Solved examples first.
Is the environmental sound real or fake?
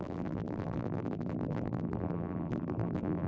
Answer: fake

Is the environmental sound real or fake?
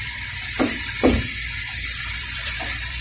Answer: fake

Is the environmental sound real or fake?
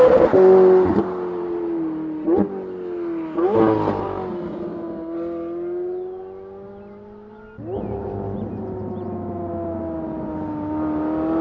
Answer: real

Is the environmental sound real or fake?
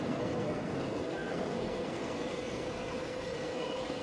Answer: fake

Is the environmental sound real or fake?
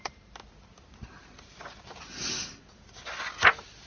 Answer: real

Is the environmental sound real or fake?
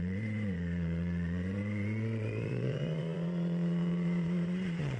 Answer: fake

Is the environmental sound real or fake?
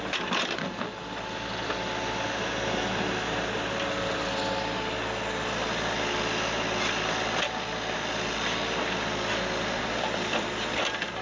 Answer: real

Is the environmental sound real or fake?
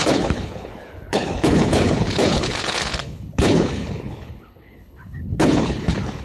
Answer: fake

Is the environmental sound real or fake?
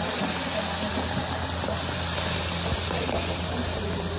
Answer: real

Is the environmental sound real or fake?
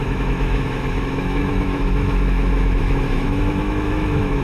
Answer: fake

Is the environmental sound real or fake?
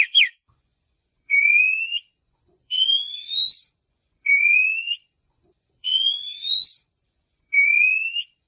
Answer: fake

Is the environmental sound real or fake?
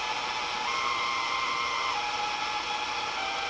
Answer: real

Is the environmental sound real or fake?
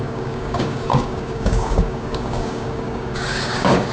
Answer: fake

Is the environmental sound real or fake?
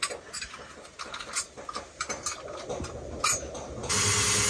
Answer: real